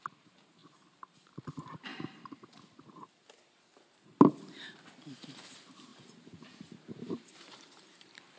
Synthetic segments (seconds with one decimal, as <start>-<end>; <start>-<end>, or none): 0.0-0.6; 1.5-1.9; 5.1-8.4